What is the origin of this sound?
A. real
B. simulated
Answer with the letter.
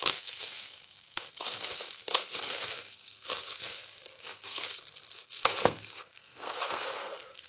B